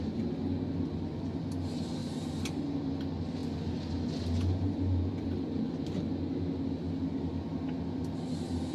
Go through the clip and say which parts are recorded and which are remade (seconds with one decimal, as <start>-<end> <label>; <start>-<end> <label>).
0.0-2.0 recorded; 2.0-2.9 remade; 2.9-8.7 recorded